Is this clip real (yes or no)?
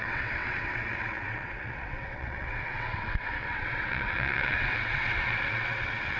no